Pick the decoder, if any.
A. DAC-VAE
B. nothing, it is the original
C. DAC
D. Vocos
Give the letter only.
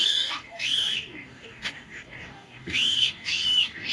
C